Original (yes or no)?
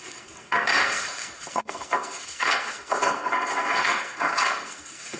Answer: no